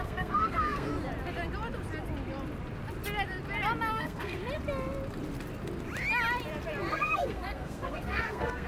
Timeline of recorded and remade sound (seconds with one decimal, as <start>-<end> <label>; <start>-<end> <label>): 0.0-0.9 remade; 0.9-3.9 recorded; 3.9-4.4 remade; 4.4-6.9 recorded; 6.9-8.7 remade